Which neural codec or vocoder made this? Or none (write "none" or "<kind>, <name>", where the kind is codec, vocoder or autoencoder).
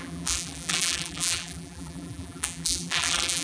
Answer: vocoder, BigVGAN v2